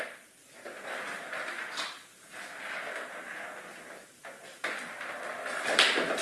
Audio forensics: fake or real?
real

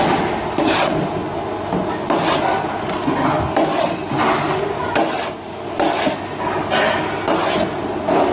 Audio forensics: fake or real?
real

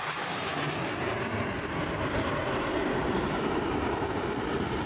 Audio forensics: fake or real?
fake